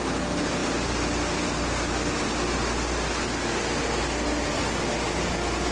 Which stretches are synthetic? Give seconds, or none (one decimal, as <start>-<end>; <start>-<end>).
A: none